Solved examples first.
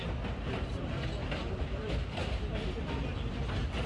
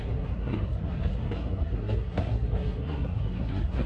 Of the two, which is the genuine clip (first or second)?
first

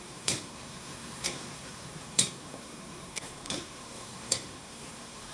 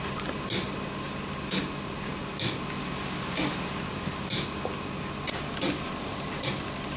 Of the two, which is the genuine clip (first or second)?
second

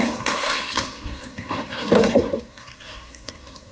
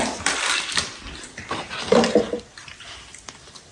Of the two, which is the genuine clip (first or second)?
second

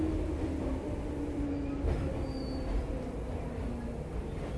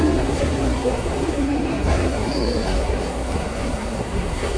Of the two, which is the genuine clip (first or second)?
first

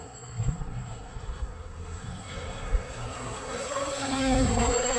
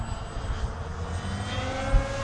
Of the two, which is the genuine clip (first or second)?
second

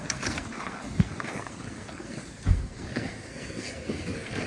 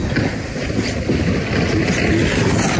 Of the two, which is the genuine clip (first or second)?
second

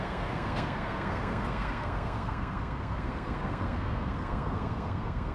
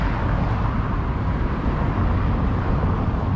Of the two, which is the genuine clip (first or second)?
second